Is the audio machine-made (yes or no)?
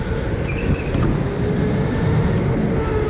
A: no